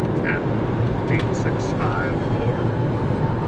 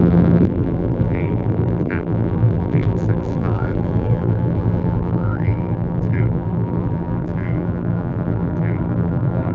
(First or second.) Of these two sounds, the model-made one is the second